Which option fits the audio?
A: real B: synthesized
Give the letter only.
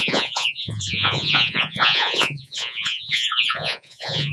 B